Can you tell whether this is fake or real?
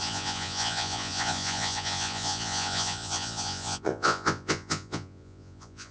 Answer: fake